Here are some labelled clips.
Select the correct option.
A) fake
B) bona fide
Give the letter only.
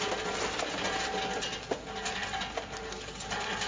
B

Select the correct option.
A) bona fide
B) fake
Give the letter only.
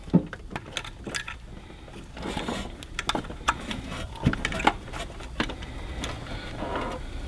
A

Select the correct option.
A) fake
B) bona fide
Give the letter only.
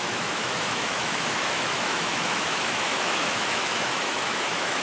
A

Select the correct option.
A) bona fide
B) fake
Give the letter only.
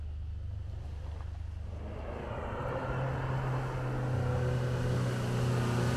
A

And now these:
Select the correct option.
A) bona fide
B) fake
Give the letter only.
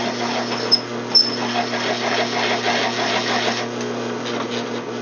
A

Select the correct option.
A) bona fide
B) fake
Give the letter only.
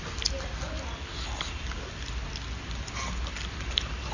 A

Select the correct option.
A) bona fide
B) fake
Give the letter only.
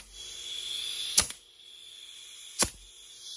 A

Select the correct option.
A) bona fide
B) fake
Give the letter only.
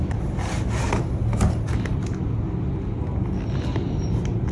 A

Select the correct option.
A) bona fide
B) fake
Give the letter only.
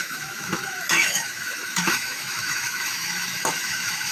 B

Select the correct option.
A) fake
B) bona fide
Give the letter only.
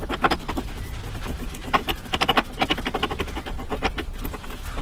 B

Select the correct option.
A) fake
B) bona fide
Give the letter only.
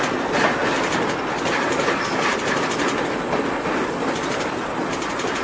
B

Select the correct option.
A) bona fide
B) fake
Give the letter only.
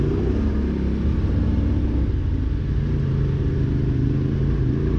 A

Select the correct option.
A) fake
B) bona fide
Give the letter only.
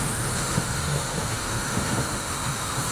A